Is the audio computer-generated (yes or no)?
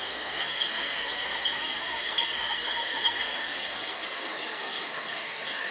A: yes